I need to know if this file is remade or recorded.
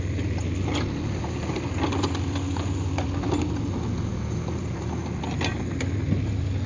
recorded